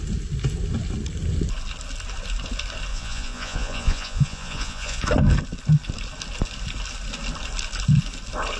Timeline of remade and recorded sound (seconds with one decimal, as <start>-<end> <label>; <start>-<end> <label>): 0.0-2.9 recorded; 2.9-5.0 remade; 5.0-8.6 recorded